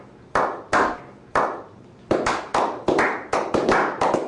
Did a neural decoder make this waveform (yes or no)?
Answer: no